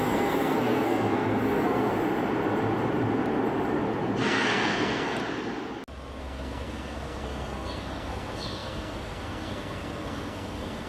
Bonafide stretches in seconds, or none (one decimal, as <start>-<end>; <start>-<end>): 1.9-4.2; 5.2-6.2